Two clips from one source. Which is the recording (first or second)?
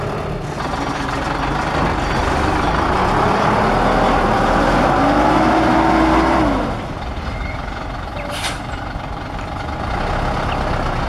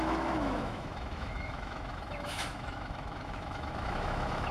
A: first